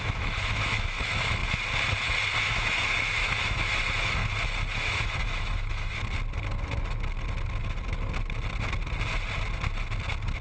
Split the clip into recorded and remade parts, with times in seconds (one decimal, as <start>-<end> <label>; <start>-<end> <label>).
0.0-1.4 remade; 1.4-2.4 recorded; 2.4-4.2 remade; 4.2-4.7 recorded; 4.7-6.0 remade; 6.0-10.4 recorded